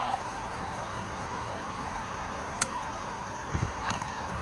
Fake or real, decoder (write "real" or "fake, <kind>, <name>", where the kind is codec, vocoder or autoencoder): fake, codec, SNAC